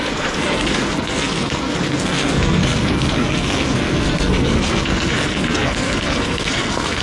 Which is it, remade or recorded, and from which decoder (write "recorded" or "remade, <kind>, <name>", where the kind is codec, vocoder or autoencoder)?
remade, codec, SNAC